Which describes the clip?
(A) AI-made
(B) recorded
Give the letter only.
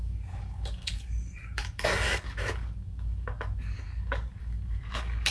A